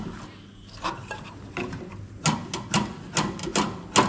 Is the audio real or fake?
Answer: real